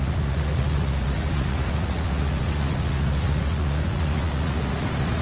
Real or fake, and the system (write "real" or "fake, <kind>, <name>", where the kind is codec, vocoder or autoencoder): fake, vocoder, Vocos